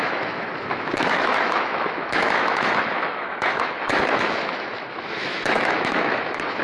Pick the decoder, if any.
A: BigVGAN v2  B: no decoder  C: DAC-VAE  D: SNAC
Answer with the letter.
C